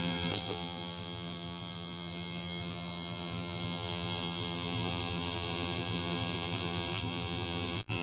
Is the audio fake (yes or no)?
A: yes